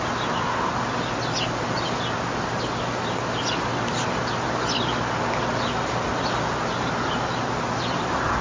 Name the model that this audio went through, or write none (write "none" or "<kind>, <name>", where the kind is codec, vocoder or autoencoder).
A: none